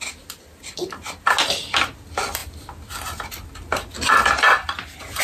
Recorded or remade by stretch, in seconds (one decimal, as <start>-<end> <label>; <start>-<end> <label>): 0.0-5.2 recorded